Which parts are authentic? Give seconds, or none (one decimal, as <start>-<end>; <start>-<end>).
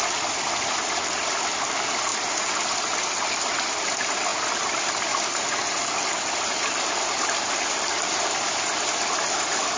0.0-9.8